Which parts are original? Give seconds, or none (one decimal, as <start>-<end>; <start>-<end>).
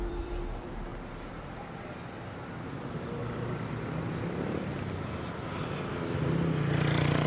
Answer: 0.9-2.8; 3.2-4.0; 4.7-7.3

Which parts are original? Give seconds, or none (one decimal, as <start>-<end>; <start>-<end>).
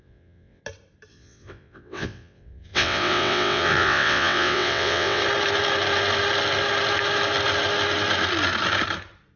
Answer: 0.6-1.1; 5.2-9.4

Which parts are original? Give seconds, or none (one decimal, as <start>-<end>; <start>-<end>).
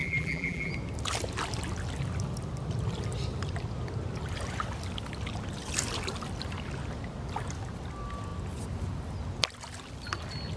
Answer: 0.7-10.6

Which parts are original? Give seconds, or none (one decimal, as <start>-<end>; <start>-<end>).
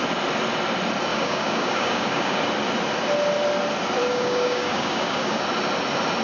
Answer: 0.0-1.1; 2.4-4.0; 5.4-6.2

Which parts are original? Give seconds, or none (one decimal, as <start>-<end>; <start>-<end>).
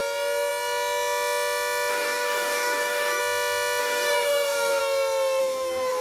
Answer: 0.0-1.9; 3.2-3.8; 4.8-5.4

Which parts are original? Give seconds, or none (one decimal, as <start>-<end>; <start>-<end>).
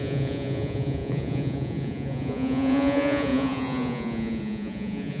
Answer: none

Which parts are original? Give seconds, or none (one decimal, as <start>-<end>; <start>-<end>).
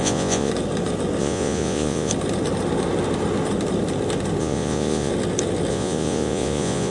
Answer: 0.5-1.2; 2.1-4.4; 5.1-5.7